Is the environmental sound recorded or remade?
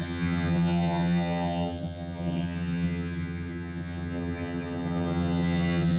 remade